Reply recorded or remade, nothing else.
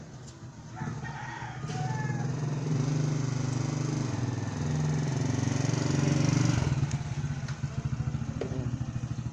recorded